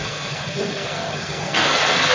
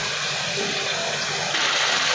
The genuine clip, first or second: second